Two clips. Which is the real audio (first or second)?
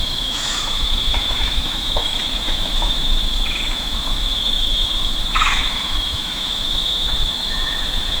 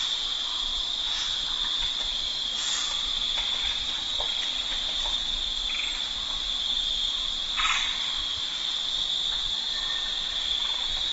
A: second